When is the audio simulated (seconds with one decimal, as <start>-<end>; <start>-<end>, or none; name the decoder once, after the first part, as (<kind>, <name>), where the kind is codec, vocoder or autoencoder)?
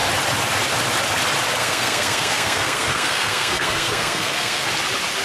1.6-4.7 (codec, SNAC)